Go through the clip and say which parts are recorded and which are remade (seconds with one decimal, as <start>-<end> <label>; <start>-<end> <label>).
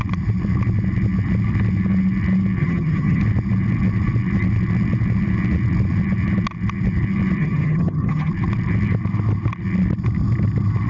0.0-2.6 recorded; 2.6-3.2 remade; 3.2-7.4 recorded; 7.4-8.3 remade; 8.3-10.9 recorded